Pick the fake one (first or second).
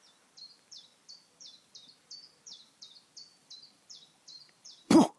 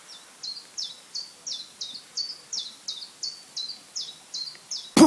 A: first